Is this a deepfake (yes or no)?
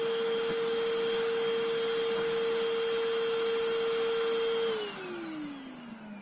no